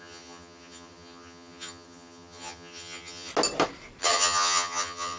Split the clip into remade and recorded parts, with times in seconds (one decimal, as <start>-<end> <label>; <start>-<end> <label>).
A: 0.0-3.3 remade; 3.3-4.0 recorded; 4.0-5.2 remade